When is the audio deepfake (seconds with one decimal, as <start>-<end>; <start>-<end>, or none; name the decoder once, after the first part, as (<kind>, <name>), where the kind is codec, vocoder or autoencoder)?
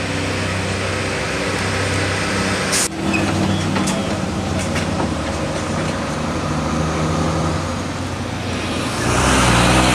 4.0-6.7 (vocoder, BigVGAN v2)